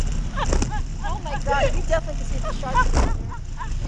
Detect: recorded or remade recorded